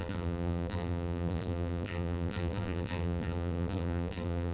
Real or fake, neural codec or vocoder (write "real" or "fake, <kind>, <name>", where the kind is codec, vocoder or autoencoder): fake, vocoder, BigVGAN v2